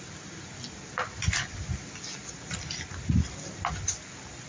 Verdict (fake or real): real